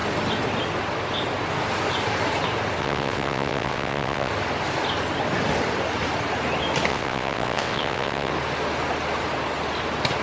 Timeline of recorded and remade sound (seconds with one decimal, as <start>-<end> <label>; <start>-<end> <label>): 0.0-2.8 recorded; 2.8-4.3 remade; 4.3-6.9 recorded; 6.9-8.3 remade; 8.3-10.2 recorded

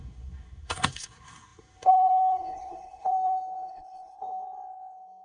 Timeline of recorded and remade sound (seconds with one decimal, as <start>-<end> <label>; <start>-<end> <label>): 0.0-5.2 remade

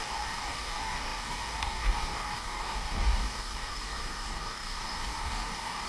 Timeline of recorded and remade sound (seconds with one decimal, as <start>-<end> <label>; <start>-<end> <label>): 0.0-5.9 remade

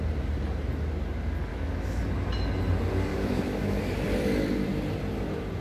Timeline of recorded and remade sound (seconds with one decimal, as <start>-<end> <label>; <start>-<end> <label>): 0.0-1.5 recorded; 1.5-2.0 remade; 2.0-3.1 recorded; 3.1-3.8 remade; 3.8-5.6 recorded